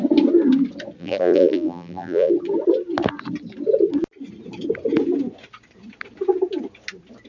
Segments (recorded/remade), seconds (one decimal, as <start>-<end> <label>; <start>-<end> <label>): 0.0-1.0 recorded; 1.0-2.3 remade; 2.3-7.3 recorded